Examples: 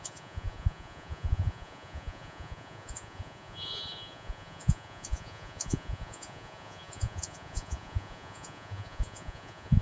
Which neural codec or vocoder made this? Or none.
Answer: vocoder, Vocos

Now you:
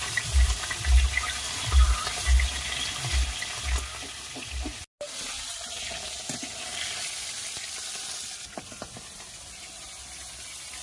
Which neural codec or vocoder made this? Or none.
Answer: none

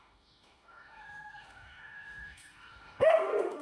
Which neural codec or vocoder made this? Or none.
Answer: autoencoder, DAC-VAE